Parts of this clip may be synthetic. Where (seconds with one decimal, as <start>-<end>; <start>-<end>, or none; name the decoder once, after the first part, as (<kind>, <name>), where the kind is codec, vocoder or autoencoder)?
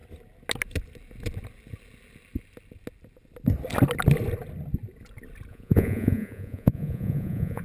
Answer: 5.5-7.6 (vocoder, Vocos)